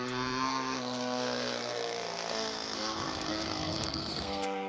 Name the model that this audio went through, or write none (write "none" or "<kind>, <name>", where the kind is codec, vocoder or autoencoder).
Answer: codec, SNAC